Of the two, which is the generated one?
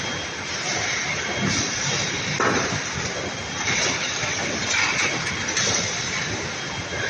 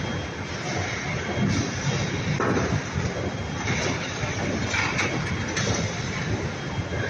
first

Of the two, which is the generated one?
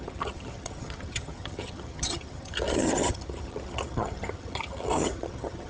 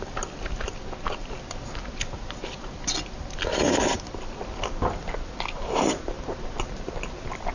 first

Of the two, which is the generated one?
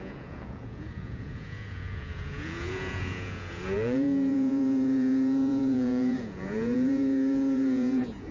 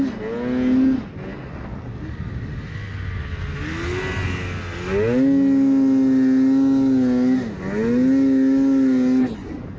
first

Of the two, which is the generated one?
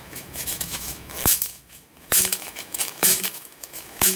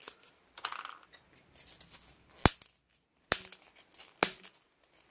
first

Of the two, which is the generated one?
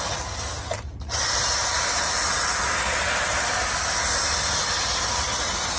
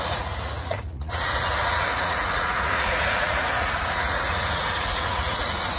second